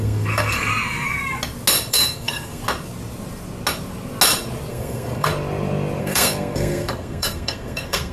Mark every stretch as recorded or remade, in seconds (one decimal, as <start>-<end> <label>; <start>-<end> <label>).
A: 0.0-0.7 remade; 0.7-1.9 recorded; 1.9-2.6 remade; 2.6-4.7 recorded; 4.7-5.3 remade; 5.3-6.0 recorded; 6.0-8.1 remade